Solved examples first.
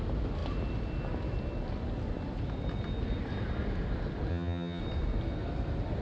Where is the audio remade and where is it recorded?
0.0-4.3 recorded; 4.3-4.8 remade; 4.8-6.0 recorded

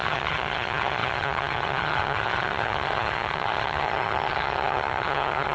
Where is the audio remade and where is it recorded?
0.0-5.5 remade

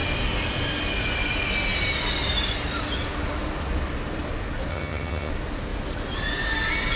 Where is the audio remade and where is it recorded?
0.0-4.7 recorded; 4.7-5.3 remade; 5.3-7.0 recorded

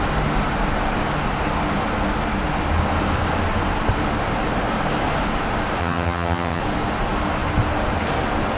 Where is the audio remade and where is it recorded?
0.0-5.8 recorded; 5.8-6.6 remade; 6.6-8.6 recorded

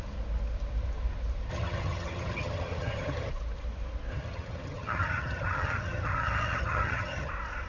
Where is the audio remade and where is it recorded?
0.0-1.5 recorded; 1.5-3.3 remade; 3.3-4.1 recorded; 4.1-7.3 remade; 7.3-7.7 recorded